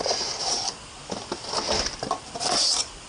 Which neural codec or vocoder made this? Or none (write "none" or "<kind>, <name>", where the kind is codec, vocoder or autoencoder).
none